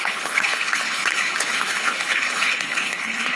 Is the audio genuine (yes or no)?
no